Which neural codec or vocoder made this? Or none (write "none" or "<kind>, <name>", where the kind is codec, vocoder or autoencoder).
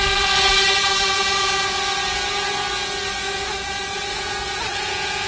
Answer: vocoder, Vocos